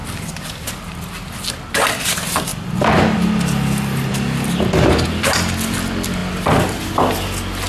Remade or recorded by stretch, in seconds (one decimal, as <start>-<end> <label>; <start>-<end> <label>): 0.0-7.7 recorded